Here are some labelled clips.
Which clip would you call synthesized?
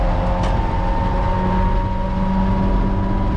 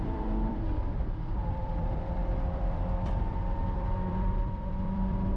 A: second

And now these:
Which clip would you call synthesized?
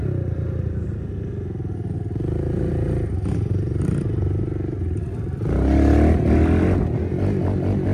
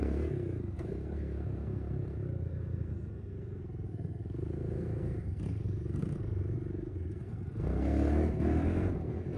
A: second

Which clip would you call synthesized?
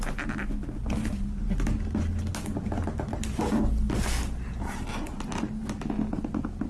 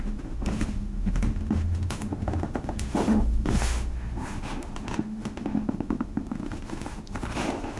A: second